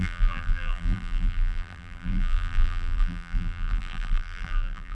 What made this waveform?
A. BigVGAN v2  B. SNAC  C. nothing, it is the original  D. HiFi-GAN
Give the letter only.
A